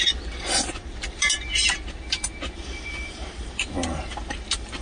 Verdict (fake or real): fake